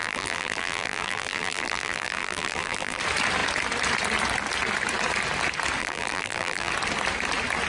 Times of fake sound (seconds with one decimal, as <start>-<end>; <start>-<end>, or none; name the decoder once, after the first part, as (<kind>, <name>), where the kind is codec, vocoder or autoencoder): 0.0-3.0 (vocoder, BigVGAN v2); 5.8-6.7